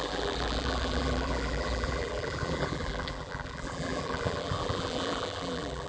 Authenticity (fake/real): fake